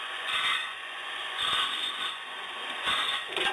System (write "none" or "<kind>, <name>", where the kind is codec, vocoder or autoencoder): vocoder, Vocos